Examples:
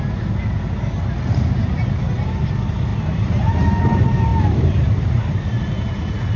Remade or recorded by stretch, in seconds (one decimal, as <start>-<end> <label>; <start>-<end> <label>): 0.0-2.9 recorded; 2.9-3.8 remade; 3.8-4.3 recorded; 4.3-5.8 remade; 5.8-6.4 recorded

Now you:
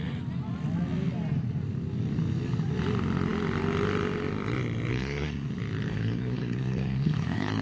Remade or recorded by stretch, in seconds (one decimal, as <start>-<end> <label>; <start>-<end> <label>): 0.0-4.9 recorded; 4.9-5.5 remade; 5.5-5.9 recorded; 5.9-7.6 remade

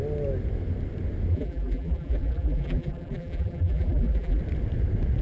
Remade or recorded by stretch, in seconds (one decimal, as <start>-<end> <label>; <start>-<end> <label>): 0.0-1.3 recorded; 1.3-4.4 remade; 4.4-5.2 recorded